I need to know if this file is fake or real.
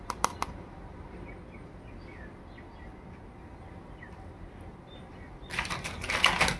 real